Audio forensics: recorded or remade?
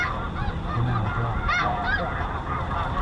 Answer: recorded